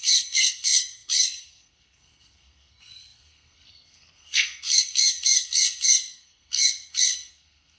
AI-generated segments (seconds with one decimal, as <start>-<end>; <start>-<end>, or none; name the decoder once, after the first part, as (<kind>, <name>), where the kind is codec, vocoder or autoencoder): 0.0-7.8 (codec, SNAC)